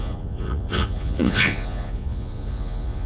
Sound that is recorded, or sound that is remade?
remade